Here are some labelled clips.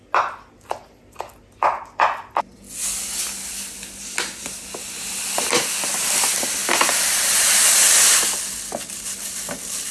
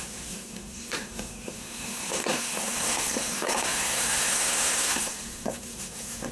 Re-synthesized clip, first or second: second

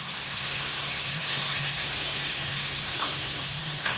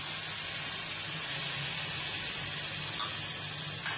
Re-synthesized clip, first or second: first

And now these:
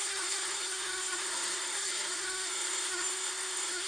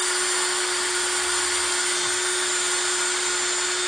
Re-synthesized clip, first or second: first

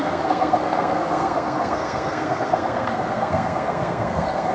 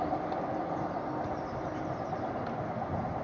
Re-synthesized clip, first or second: first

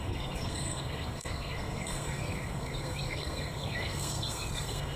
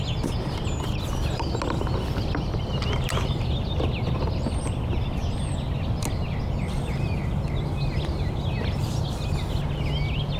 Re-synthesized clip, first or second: first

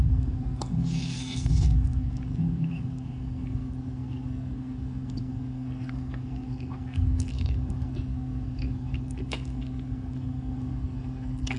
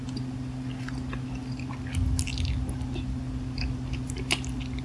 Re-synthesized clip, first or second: first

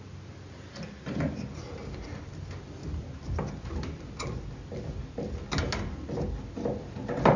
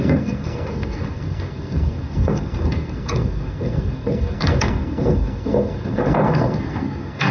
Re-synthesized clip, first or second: second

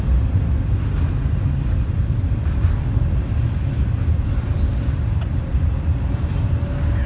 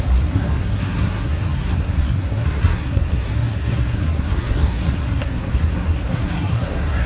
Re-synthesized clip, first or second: second